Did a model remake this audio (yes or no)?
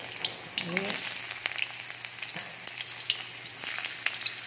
no